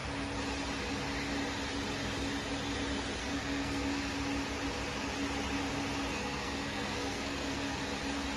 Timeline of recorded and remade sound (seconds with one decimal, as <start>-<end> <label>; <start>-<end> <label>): 0.0-3.2 recorded; 3.2-4.0 remade; 4.0-6.1 recorded; 6.1-7.8 remade; 7.8-8.4 recorded